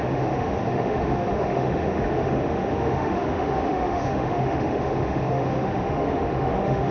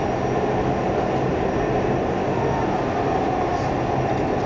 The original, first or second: second